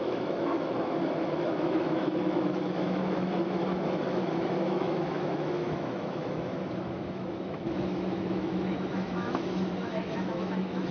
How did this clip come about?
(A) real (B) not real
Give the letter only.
B